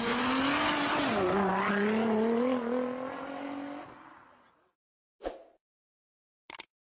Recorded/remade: recorded